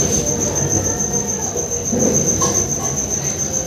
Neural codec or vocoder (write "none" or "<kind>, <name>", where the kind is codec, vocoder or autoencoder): none